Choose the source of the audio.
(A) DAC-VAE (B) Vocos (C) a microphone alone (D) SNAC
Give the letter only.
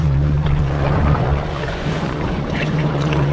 B